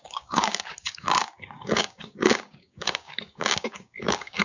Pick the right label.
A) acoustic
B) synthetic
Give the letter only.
B